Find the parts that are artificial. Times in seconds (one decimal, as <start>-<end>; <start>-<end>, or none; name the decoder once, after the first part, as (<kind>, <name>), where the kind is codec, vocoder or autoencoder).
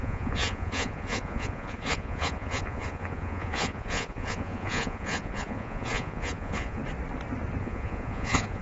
0.0-6.8 (vocoder, Vocos); 7.6-8.6